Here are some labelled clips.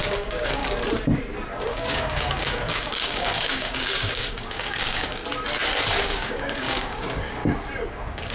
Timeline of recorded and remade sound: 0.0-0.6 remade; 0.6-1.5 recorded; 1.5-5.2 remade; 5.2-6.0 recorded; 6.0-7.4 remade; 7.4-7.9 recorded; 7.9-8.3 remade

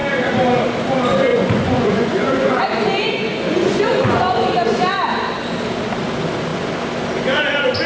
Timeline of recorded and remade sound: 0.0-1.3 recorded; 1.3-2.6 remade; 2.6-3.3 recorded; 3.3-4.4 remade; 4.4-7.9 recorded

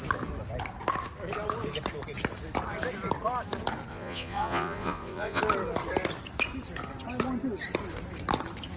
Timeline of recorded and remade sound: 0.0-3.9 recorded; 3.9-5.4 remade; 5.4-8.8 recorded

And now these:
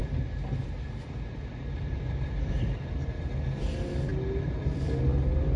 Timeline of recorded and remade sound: 0.0-5.6 recorded

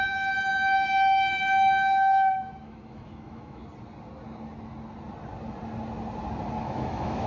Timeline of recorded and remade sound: 0.0-3.6 remade; 3.6-6.6 recorded; 6.6-7.3 remade

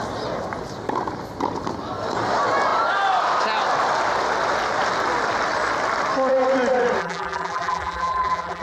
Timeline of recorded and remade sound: 0.0-7.0 recorded; 7.0-8.6 remade

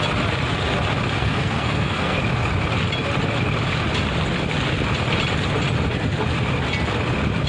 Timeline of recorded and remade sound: 0.0-1.2 recorded; 1.2-2.2 remade; 2.2-7.5 recorded